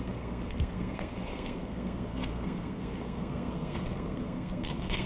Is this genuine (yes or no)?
no